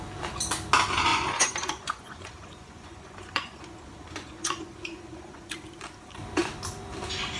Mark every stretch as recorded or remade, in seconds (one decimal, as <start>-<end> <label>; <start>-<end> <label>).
0.0-1.1 recorded; 1.1-5.5 remade; 5.5-7.4 recorded